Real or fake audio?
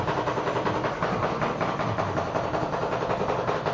real